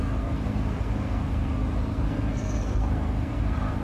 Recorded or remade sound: remade